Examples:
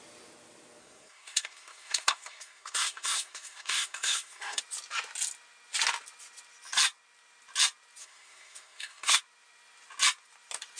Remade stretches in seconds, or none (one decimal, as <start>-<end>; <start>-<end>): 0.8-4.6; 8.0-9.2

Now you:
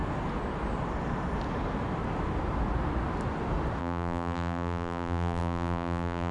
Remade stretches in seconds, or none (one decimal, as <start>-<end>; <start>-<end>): 3.8-6.3

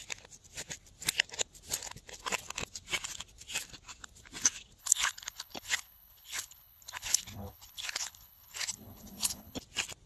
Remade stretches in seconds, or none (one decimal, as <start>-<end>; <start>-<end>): 4.8-9.6